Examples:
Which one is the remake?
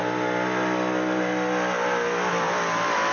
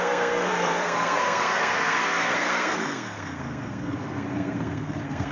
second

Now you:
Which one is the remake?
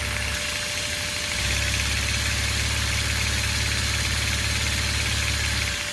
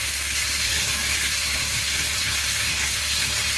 second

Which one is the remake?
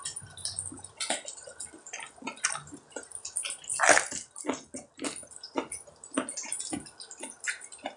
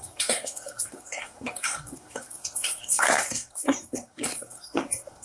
second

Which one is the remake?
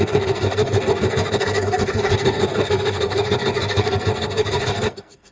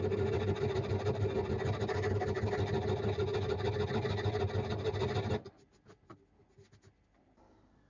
first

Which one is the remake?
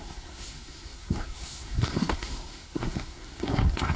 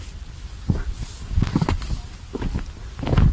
first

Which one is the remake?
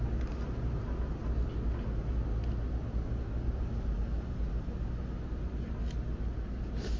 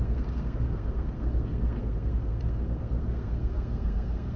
second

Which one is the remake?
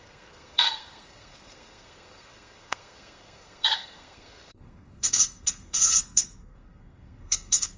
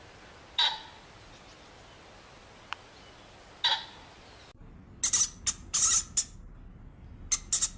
first